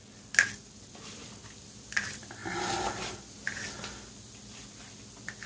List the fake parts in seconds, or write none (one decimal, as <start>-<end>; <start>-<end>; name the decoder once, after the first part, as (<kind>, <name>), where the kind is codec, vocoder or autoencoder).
none